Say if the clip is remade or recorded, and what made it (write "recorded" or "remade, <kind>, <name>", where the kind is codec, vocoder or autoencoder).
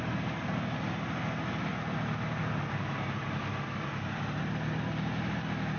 recorded